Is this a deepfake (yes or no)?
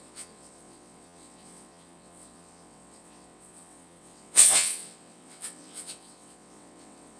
yes